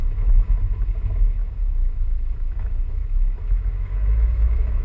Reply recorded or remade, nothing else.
remade